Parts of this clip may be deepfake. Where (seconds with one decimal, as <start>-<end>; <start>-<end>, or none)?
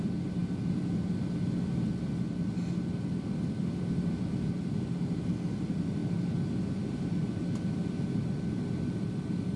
none